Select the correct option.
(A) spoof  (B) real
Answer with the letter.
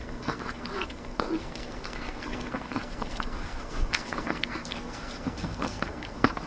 A